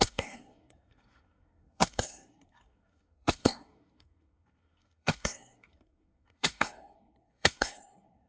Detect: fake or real fake